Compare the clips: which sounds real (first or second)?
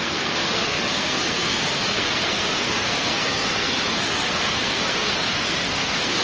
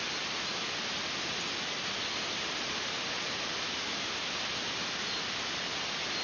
second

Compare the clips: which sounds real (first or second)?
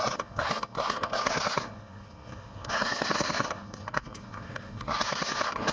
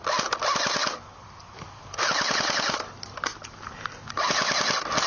second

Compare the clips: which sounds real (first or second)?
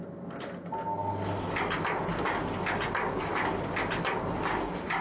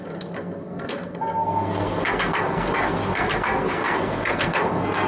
first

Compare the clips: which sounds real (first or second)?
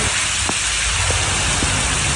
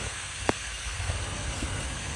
first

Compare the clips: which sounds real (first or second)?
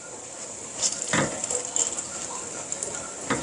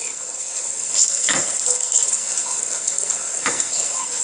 first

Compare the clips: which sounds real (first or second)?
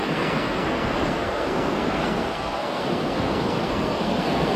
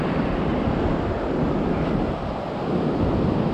second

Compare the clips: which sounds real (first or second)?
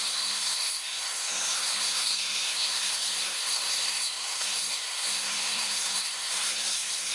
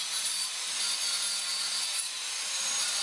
second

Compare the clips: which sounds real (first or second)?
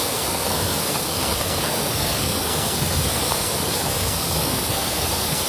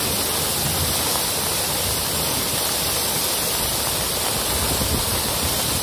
second